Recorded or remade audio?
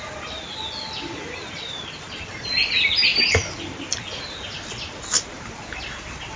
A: recorded